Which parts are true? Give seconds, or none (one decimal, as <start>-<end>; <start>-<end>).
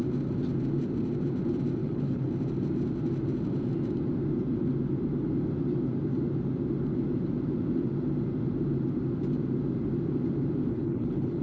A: 0.0-1.8; 2.3-10.7